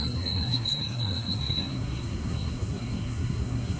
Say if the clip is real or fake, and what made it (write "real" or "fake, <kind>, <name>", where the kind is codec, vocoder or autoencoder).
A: fake, codec, SNAC